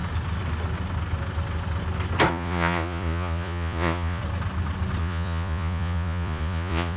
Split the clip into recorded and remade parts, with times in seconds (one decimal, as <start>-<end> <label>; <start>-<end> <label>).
0.0-2.3 recorded; 2.3-4.2 remade; 4.2-5.0 recorded; 5.0-7.0 remade